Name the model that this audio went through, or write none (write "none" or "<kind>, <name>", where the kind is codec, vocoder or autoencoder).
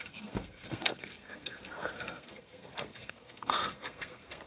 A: codec, SNAC